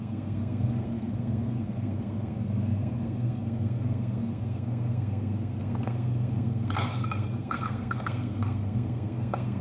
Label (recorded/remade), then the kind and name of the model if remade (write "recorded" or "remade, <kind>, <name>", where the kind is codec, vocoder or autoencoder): remade, codec, SNAC